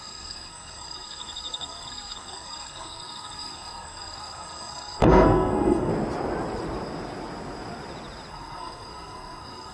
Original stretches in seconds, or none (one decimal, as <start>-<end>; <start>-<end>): 5.9-8.3